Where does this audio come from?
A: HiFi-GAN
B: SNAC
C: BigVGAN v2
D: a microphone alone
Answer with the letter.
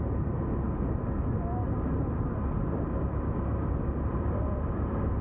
D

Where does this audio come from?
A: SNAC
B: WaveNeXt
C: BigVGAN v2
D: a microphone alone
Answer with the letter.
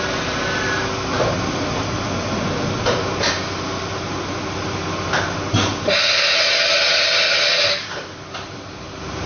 D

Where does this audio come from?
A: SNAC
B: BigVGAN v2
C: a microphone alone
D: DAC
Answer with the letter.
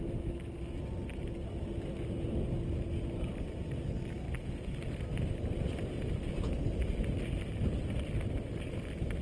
C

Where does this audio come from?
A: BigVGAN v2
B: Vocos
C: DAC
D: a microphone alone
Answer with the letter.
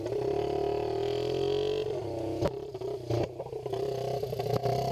D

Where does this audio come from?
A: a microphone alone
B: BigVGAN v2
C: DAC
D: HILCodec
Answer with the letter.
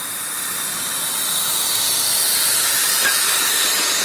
A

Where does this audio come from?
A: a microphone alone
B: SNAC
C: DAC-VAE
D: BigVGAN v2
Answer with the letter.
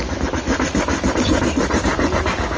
A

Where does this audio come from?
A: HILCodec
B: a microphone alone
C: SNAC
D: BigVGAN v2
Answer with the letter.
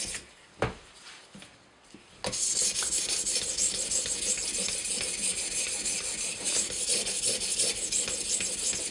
B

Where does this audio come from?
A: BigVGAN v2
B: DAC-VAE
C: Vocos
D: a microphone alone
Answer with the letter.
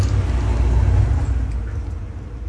D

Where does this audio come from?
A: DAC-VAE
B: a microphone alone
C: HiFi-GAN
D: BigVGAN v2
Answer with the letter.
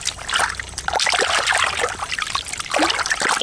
B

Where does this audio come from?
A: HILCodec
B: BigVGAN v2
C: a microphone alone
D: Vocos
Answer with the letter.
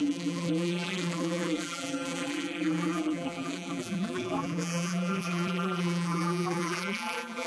B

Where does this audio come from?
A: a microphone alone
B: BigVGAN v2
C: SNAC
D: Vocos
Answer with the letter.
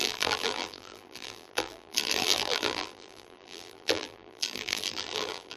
B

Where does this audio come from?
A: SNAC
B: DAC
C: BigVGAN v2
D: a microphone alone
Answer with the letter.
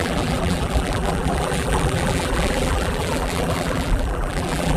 C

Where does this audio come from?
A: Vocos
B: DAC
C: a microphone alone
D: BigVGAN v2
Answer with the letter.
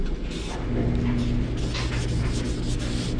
C